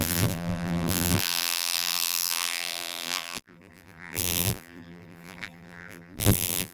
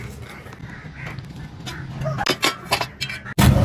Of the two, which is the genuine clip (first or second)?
second